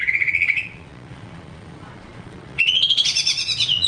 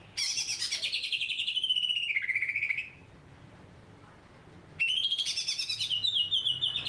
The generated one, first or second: first